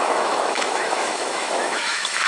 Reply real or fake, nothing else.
fake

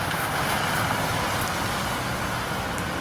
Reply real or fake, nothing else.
real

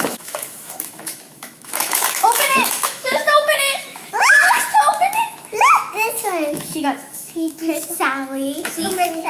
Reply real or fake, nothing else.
fake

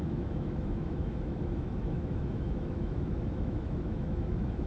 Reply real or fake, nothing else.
fake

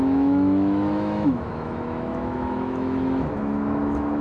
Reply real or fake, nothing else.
fake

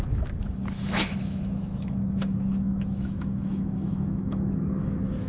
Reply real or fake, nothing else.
fake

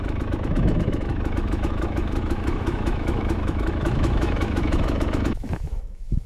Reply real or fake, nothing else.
fake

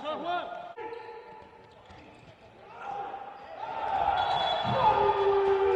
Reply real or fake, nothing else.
real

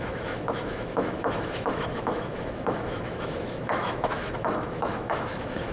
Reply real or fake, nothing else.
fake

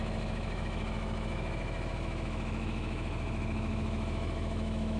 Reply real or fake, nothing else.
fake